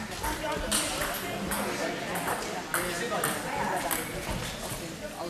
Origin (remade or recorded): recorded